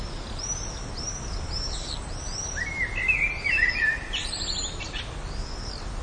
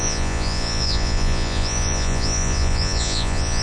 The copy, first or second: second